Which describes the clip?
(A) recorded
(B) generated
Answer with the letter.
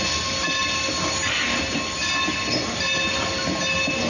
A